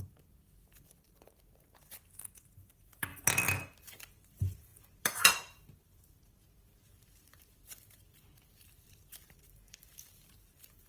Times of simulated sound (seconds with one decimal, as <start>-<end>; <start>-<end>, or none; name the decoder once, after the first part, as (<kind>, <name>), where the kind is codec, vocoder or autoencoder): 0.0-3.1 (vocoder, BigVGAN v2); 4.0-10.9